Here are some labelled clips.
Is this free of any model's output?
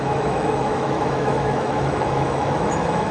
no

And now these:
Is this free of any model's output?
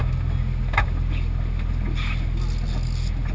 yes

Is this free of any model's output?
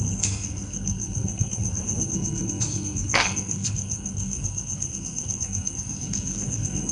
no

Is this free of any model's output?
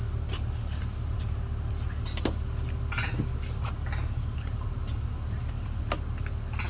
yes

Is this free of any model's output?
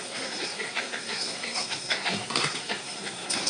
no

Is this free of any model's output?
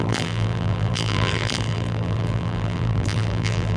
no